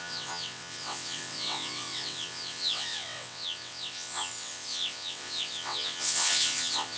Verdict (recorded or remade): remade